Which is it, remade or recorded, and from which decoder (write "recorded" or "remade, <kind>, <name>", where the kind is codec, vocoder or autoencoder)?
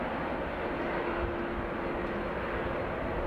recorded